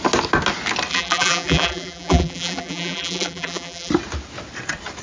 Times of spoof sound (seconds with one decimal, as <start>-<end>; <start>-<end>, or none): 0.9-3.9